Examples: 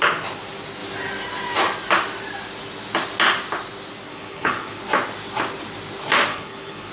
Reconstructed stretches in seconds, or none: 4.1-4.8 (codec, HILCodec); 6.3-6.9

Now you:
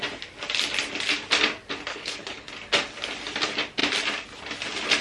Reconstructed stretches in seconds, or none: 1.9-2.5 (codec, HILCodec)

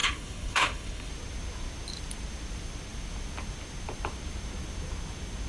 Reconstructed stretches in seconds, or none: 0.0-1.1 (codec, HILCodec)

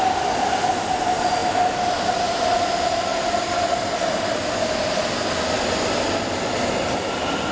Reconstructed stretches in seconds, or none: none

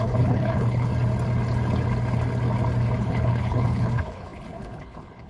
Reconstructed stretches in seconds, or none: 0.0-0.9 (codec, HILCodec); 3.0-5.3

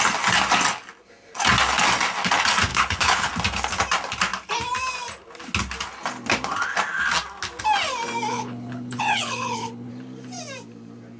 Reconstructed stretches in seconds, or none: 2.7-3.3 (codec, HILCodec); 8.3-9.9

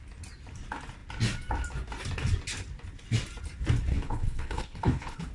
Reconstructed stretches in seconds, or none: 3.9-5.3 (codec, HILCodec)

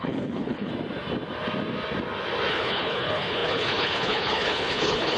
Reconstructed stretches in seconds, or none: 0.0-0.7 (codec, HILCodec); 2.5-5.2